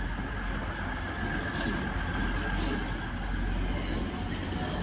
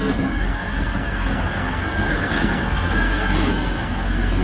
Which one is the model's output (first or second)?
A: second